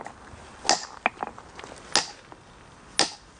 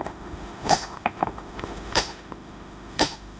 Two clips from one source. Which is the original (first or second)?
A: first